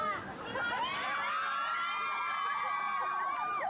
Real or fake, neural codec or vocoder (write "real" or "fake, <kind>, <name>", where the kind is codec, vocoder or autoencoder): real